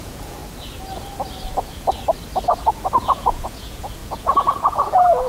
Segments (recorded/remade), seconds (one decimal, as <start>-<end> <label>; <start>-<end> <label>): 0.0-0.4 remade; 0.4-3.0 recorded; 3.0-5.3 remade